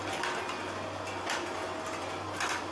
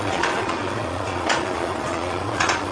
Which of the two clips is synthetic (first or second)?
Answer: second